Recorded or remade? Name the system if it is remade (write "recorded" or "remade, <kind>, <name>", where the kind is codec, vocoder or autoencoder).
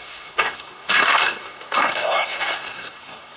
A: remade, codec, SNAC